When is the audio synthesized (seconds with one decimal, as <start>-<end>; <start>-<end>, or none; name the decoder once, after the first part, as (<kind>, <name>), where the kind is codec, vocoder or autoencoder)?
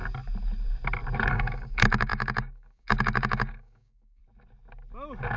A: 1.3-4.2 (codec, DAC)